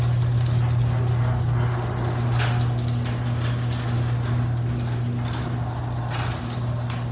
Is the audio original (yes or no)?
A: yes